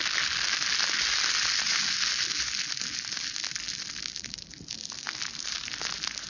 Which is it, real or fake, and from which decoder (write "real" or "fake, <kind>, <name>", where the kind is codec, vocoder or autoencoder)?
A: real